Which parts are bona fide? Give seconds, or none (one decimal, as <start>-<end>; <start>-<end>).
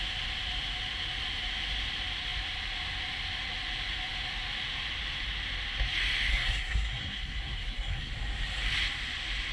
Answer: 0.0-6.3; 8.1-9.5